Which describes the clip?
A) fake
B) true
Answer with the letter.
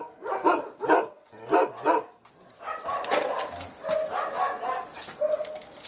B